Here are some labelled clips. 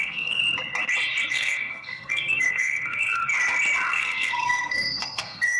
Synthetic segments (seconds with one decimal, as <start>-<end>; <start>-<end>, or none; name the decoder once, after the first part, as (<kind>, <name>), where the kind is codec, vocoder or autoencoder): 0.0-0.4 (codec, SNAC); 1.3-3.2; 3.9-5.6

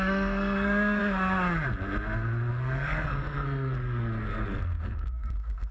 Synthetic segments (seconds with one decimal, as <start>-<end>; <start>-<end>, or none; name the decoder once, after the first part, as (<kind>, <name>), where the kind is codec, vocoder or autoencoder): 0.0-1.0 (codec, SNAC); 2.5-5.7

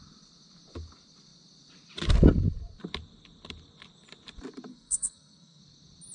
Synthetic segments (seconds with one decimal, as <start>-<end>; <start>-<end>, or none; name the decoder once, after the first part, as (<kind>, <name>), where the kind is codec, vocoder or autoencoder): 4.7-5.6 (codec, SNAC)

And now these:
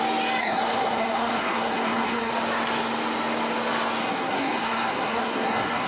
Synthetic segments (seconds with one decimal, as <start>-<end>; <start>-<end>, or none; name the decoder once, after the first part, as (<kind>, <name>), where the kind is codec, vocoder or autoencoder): 0.4-2.3 (codec, SNAC); 4.0-5.9

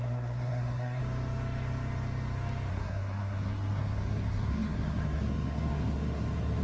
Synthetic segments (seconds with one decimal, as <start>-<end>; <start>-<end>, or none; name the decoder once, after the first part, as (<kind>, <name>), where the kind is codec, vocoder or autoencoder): 0.0-1.0 (codec, SNAC); 2.7-6.6